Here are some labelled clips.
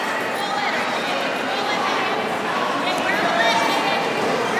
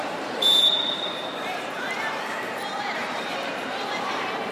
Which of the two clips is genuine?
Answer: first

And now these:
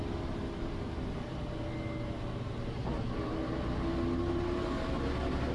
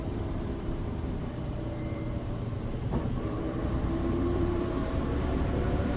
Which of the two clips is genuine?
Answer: first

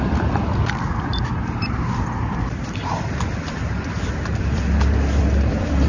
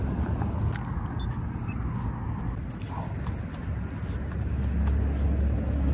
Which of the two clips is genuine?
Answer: second